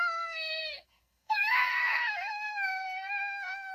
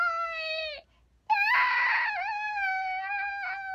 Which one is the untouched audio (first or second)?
second